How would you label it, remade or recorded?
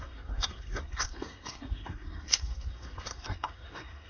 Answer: remade